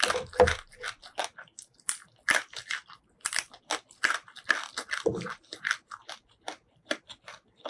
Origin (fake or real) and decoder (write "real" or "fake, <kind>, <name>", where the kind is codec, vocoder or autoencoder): fake, vocoder, BigVGAN v2